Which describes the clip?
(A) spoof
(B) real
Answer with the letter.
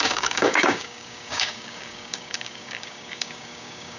A